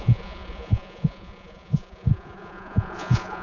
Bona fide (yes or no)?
no